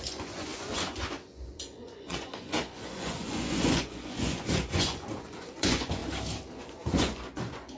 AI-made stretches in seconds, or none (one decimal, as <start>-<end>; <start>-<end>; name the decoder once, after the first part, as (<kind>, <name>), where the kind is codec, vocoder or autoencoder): 0.0-6.0 (vocoder, Vocos); 6.6-7.8